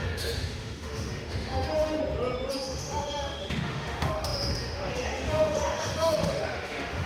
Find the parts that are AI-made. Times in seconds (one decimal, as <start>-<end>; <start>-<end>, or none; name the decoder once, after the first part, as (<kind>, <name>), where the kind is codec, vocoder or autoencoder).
0.0-2.0 (autoencoder, DAC-VAE); 2.5-7.1